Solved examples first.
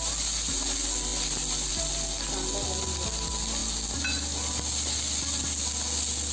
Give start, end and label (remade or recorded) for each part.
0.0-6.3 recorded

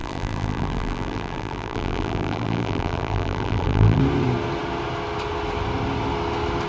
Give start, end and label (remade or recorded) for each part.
0.0-4.0 remade; 4.0-6.7 recorded

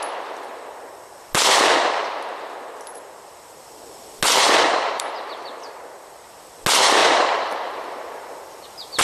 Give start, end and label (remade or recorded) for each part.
0.0-4.3 recorded; 4.3-5.5 remade; 5.5-7.0 recorded; 7.0-9.0 remade

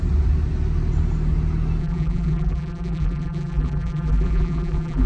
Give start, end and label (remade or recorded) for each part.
0.0-1.8 recorded; 1.8-5.1 remade

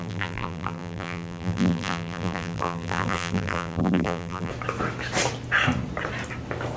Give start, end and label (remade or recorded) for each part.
0.0-4.5 remade; 4.5-6.8 recorded